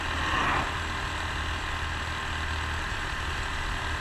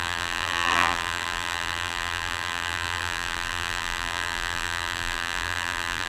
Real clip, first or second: first